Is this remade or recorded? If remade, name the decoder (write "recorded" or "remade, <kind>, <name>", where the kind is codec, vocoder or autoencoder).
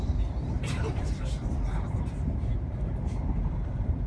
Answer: remade, vocoder, BigVGAN v2